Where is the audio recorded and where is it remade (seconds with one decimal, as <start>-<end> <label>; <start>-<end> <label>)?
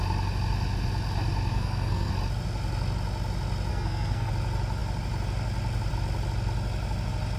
0.0-1.5 recorded; 1.5-2.1 remade; 2.1-3.7 recorded; 3.7-4.3 remade; 4.3-7.4 recorded